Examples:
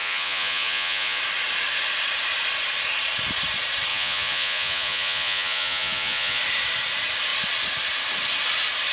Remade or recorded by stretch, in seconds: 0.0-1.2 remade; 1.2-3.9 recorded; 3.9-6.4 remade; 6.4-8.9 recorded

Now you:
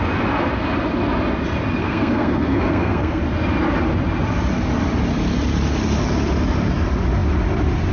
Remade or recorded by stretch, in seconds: 0.0-1.8 recorded; 1.8-3.2 remade; 3.2-7.9 recorded

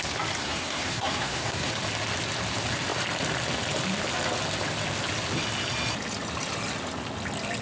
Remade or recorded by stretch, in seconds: 0.0-0.4 recorded; 0.4-1.7 remade; 1.7-7.6 recorded

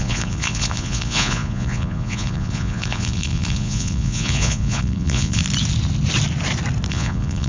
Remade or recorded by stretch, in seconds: 0.0-5.4 remade; 5.4-6.9 recorded; 6.9-7.5 remade

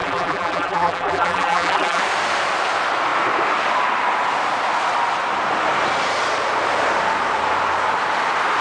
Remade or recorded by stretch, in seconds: 0.0-2.0 remade; 2.0-8.6 recorded